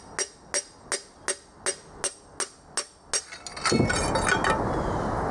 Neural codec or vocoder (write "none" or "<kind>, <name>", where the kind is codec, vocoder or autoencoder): none